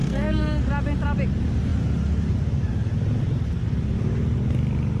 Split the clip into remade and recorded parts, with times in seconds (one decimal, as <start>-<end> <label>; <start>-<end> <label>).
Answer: 0.0-0.6 remade; 0.6-5.0 recorded